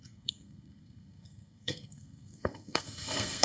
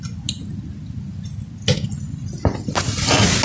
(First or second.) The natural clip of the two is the second